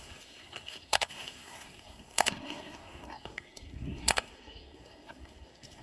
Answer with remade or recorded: remade